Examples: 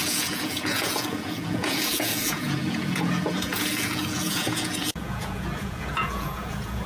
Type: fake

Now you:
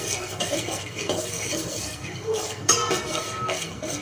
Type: fake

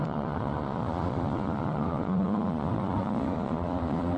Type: fake